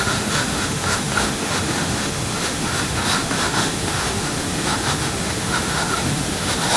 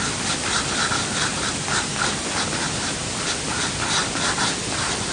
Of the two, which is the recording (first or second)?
second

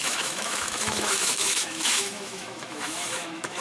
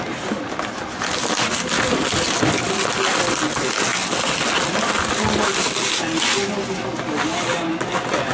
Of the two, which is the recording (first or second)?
second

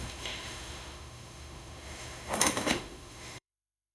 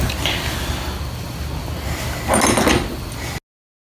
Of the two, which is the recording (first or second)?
second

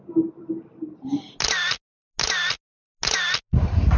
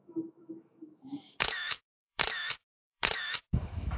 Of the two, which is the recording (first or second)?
first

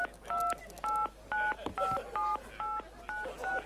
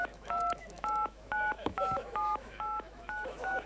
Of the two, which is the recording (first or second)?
first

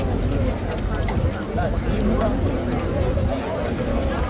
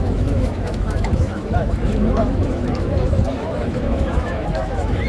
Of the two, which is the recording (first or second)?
first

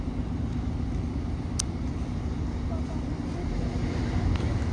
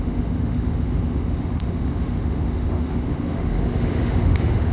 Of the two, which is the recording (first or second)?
first